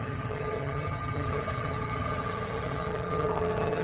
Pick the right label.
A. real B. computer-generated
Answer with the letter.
B